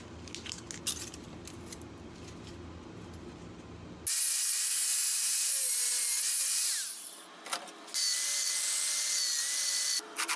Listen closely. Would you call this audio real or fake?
real